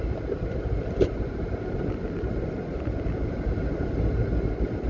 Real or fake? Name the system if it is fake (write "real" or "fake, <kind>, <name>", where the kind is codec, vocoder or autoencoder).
real